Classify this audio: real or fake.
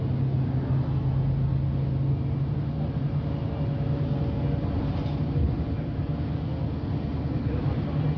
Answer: real